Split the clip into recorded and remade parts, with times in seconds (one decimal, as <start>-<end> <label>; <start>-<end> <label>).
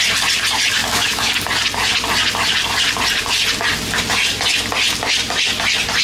0.0-0.8 recorded; 0.8-1.3 remade; 1.3-6.0 recorded